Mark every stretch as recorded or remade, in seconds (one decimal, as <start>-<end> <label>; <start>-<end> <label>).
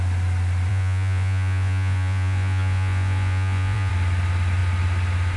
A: 0.0-0.7 recorded; 0.7-3.9 remade; 3.9-5.4 recorded